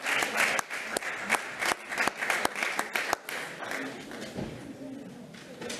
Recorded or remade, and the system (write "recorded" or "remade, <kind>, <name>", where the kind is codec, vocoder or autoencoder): recorded